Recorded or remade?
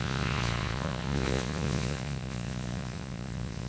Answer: remade